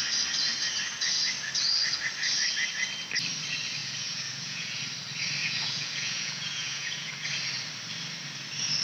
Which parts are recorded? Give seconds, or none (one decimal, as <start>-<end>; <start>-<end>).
0.0-3.8; 4.8-5.4; 7.1-8.8